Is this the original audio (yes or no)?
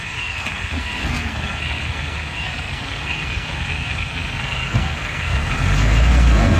no